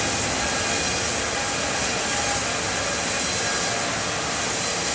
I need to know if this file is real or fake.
real